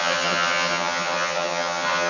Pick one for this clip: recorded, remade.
remade